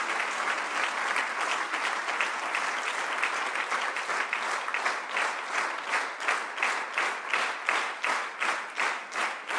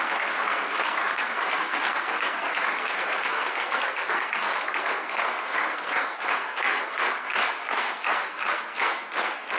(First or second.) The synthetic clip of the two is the second